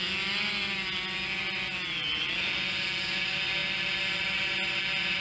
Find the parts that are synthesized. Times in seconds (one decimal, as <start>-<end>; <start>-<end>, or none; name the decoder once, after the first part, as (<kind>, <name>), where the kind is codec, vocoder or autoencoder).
none